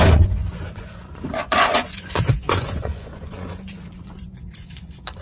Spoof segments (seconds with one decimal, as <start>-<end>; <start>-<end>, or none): 0.0-5.2